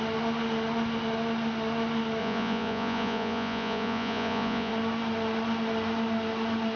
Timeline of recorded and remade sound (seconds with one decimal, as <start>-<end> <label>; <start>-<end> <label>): 0.0-2.2 recorded; 2.2-4.7 remade; 4.7-6.8 recorded